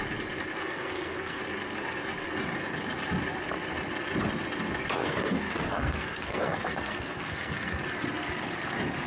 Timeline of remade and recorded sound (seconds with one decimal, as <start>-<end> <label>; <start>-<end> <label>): 0.0-0.6 recorded; 0.6-1.4 remade; 1.4-5.0 recorded; 5.0-7.8 remade; 7.8-9.1 recorded